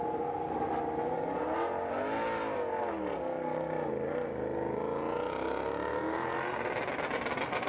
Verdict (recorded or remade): recorded